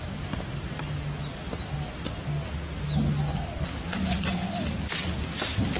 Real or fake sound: real